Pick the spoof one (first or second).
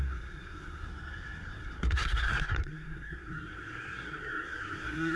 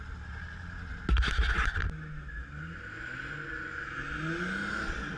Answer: first